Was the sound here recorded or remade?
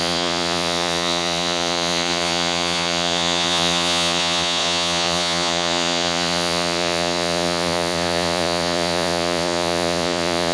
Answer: remade